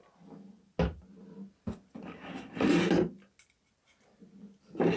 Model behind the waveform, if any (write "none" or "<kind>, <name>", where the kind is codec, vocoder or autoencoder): none